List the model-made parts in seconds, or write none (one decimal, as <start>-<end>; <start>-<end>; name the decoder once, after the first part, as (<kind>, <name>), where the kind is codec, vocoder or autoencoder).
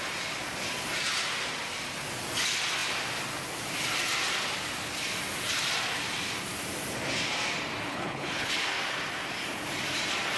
7.9-8.5 (codec, HILCodec)